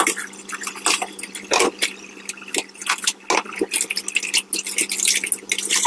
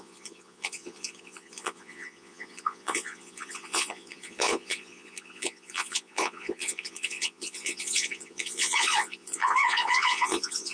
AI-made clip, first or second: second